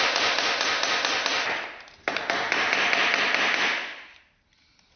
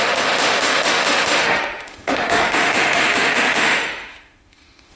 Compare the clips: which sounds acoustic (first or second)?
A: first